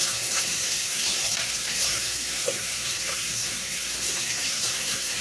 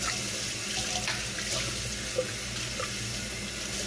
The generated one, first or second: first